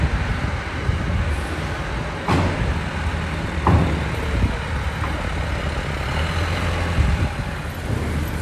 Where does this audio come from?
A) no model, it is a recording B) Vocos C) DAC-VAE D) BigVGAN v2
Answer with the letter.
A